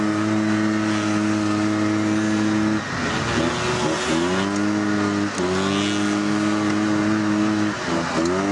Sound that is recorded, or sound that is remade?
recorded